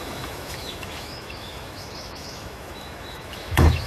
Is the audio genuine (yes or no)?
no